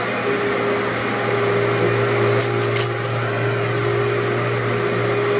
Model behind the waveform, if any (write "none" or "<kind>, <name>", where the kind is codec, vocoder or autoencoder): none